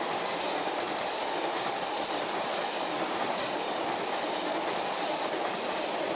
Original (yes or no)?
yes